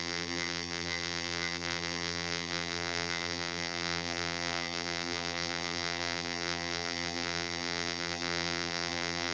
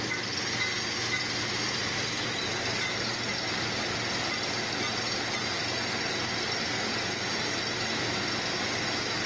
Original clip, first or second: second